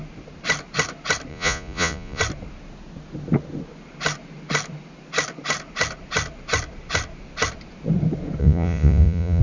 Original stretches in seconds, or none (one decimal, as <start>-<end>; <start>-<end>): 0.0-1.3; 2.2-8.4